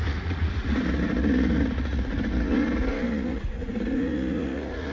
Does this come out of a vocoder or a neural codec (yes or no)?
yes